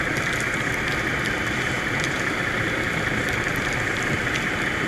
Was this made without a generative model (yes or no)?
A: no